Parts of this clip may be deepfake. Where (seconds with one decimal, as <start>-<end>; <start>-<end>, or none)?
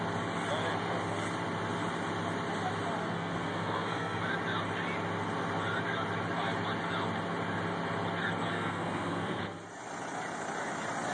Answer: 3.0-4.2; 8.5-9.4